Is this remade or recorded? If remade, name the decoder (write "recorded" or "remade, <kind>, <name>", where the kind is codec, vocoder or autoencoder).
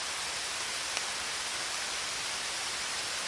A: recorded